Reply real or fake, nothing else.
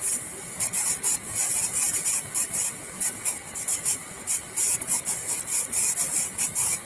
real